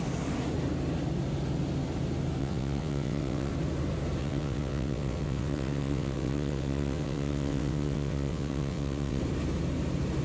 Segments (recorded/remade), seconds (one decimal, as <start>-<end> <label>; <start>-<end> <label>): 0.0-2.4 recorded; 2.4-3.5 remade; 3.5-4.2 recorded; 4.2-9.2 remade; 9.2-10.2 recorded